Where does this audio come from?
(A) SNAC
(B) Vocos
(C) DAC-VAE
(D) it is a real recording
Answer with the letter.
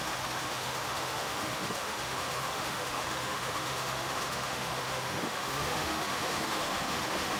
C